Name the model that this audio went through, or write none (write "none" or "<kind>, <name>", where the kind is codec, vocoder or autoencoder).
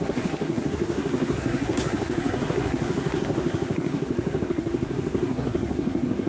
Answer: codec, SNAC